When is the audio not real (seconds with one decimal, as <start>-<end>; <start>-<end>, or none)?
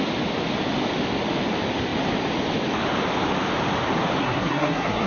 4.2-5.1